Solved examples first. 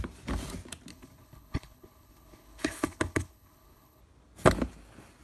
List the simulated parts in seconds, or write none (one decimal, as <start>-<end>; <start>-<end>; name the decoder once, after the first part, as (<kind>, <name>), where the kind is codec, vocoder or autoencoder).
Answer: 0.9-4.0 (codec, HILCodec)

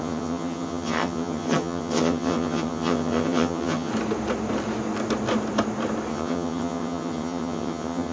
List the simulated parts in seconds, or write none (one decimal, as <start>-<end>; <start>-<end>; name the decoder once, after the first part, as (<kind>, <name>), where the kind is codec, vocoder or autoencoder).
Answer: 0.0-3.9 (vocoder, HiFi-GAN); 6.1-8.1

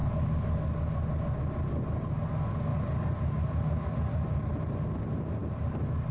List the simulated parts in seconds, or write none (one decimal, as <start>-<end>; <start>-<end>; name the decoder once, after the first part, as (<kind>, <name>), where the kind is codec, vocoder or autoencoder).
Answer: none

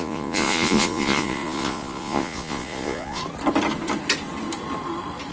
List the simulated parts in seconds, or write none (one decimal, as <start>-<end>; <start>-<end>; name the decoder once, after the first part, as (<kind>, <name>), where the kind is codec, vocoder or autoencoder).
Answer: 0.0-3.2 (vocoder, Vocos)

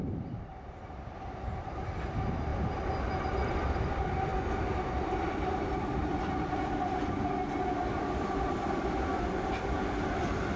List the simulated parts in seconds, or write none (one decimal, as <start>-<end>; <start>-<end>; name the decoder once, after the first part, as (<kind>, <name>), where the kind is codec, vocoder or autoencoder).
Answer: 0.0-4.3 (vocoder, BigVGAN v2); 5.2-10.6